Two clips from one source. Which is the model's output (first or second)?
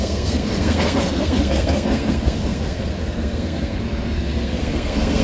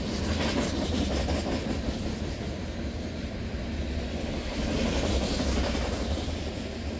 first